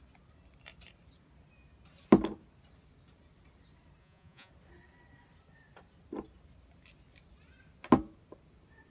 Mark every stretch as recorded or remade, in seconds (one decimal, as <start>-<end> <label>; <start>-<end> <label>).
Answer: 0.0-4.0 recorded; 4.0-4.5 remade; 4.5-8.9 recorded